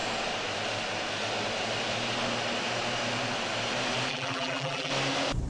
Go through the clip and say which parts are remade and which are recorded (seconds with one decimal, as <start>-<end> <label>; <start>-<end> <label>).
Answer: 0.0-4.1 recorded; 4.1-4.9 remade; 4.9-5.5 recorded